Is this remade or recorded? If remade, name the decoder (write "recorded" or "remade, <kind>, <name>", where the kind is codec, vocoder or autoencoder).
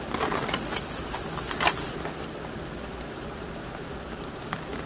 recorded